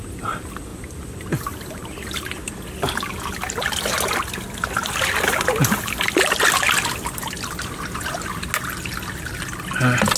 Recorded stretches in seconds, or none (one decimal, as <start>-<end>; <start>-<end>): 0.0-0.7; 1.8-10.2